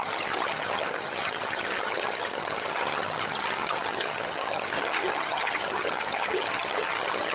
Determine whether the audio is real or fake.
fake